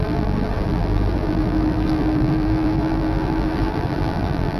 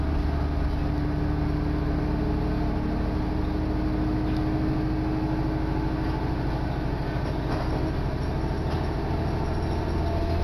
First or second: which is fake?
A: first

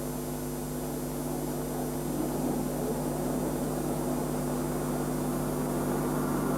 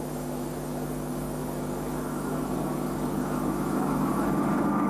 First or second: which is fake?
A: second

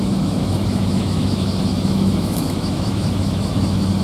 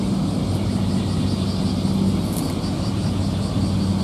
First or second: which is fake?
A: first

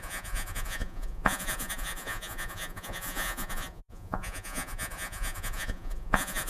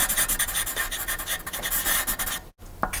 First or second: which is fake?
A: first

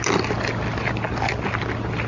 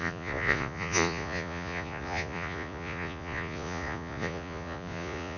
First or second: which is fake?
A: second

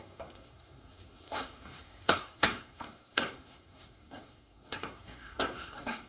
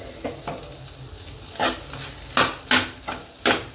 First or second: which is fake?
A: first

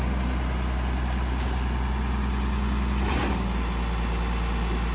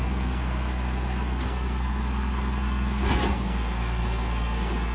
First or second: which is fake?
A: second